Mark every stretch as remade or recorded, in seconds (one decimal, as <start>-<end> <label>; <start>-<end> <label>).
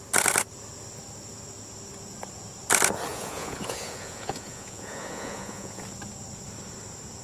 0.0-3.1 recorded; 3.1-5.8 remade; 5.8-7.2 recorded